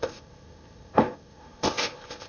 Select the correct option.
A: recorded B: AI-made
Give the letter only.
B